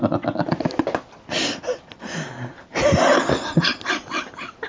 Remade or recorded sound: recorded